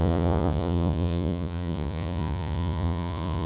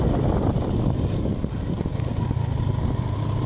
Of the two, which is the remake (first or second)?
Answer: first